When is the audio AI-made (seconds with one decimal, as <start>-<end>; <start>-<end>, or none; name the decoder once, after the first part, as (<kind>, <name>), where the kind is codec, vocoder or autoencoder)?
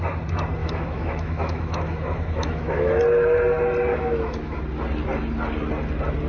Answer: 0.6-3.0 (autoencoder, DAC-VAE); 3.9-4.6